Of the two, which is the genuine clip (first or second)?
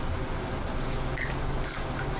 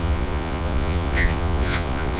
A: first